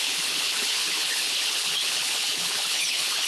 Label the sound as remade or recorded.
remade